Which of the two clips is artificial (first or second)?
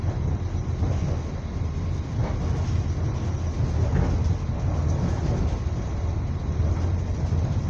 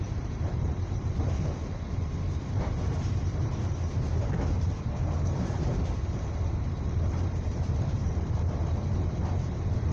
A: second